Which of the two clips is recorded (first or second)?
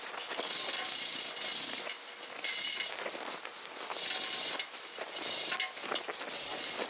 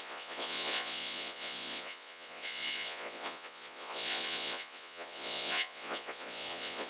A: first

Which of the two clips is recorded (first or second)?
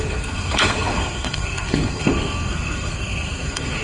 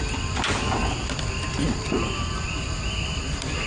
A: second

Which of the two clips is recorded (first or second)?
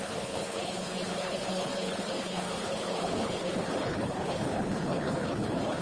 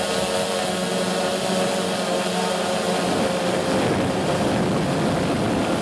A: second